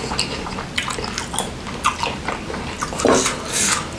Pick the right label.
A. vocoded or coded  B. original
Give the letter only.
B